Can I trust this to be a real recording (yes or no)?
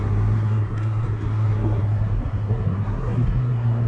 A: no